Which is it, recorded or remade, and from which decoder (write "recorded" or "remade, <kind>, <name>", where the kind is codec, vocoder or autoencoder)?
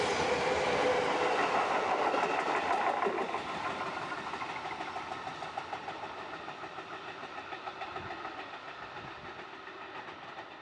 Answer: recorded